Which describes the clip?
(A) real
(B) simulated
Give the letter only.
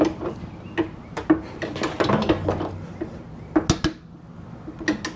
A